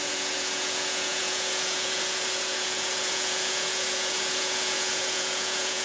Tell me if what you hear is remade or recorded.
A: remade